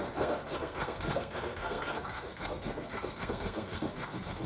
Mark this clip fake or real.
fake